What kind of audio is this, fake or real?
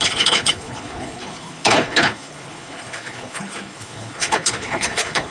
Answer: fake